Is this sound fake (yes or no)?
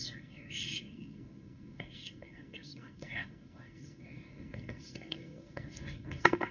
yes